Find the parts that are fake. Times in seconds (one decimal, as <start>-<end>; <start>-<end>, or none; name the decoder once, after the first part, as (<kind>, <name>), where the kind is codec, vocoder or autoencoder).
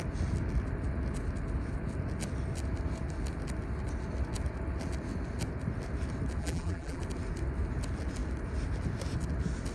6.4-7.0 (vocoder, BigVGAN v2)